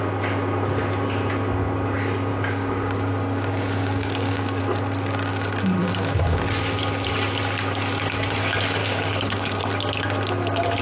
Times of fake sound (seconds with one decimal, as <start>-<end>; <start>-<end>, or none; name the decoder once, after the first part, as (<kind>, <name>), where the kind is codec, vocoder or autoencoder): 2.3-4.6 (codec, DAC); 5.8-6.4; 8.8-9.6